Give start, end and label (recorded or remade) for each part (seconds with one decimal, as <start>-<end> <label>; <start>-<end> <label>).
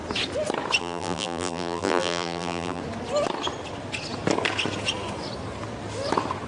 0.0-0.8 recorded; 0.8-2.8 remade; 2.8-6.5 recorded